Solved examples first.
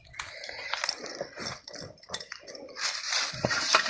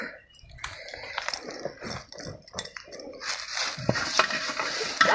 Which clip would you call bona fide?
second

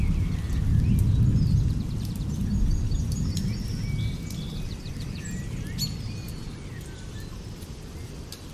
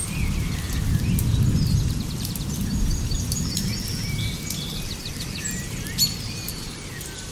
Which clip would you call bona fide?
first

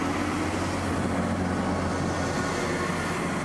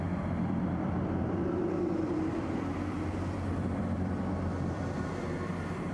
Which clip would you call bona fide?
first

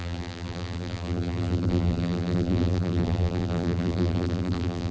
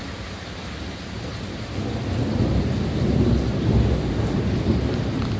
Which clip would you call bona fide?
second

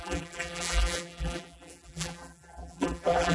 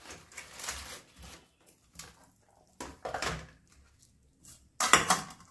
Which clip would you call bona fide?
second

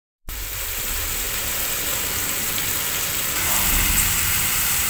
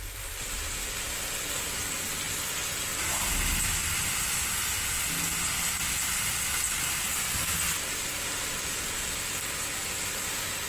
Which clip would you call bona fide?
second